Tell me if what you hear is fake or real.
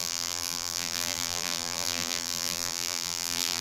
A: fake